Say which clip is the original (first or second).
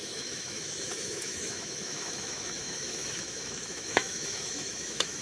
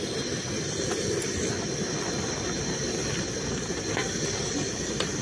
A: second